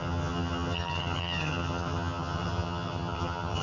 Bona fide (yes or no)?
no